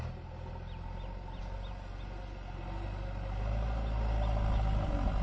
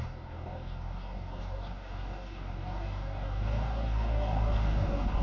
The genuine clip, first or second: first